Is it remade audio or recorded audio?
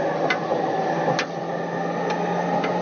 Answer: recorded